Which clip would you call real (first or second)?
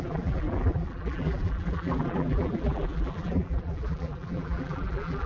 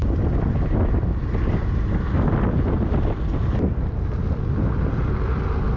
second